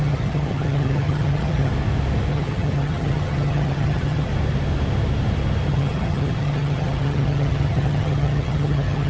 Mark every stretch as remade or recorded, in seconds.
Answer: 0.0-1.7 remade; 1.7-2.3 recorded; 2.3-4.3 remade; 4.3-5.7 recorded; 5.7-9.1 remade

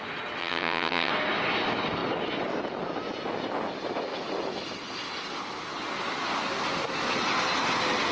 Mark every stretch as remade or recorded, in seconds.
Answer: 0.0-0.4 recorded; 0.4-1.1 remade; 1.1-8.1 recorded

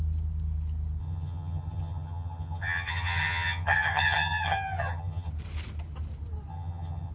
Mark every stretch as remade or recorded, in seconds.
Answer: 0.0-1.0 recorded; 1.0-5.3 remade; 5.3-6.5 recorded; 6.5-7.1 remade

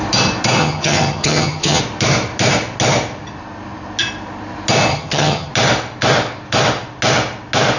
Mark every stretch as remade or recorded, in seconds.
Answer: 0.0-0.6 recorded; 0.6-1.8 remade; 1.8-4.9 recorded; 4.9-5.5 remade; 5.5-7.8 recorded

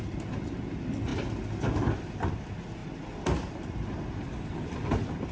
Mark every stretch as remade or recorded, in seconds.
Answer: 0.0-5.3 recorded